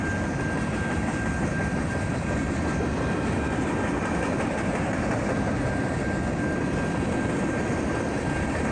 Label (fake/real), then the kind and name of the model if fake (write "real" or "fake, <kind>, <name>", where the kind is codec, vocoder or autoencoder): real